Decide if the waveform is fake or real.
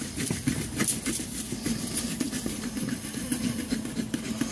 real